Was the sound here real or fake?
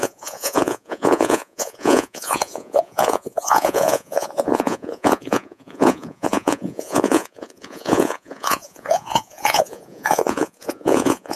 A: fake